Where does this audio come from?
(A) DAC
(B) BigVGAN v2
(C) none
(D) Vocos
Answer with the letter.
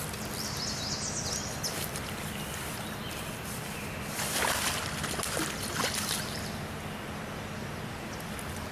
C